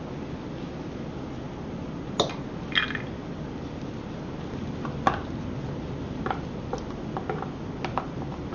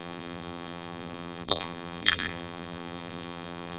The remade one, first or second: second